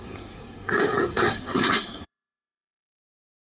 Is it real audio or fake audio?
fake